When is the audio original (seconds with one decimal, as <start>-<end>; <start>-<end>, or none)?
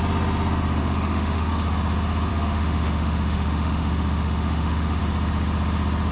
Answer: 0.0-0.8; 1.5-2.3; 5.0-6.1